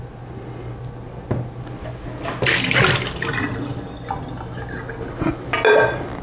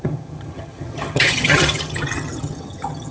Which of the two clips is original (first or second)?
first